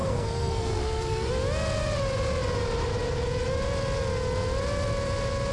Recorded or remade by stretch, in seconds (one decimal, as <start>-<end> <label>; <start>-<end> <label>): 0.0-1.3 remade; 1.3-5.5 recorded